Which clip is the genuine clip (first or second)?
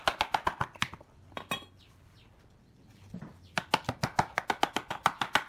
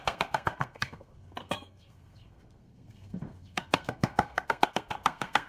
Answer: first